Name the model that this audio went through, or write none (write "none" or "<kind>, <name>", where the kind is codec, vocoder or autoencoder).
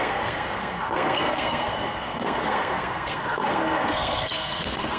codec, SNAC